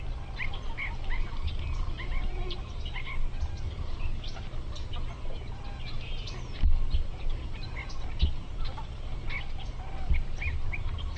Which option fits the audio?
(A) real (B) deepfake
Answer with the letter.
A